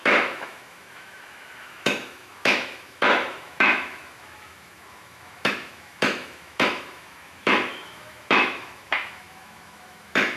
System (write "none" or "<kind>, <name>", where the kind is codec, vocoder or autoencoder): autoencoder, DAC-VAE